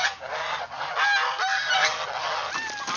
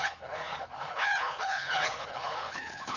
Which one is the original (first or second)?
first